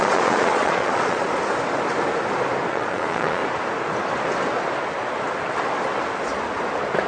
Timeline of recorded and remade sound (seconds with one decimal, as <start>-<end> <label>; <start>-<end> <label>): 0.0-1.3 remade; 1.3-2.7 recorded; 2.7-3.4 remade; 3.4-7.1 recorded